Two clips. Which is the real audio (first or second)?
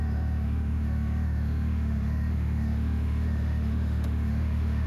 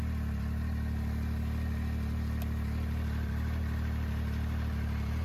second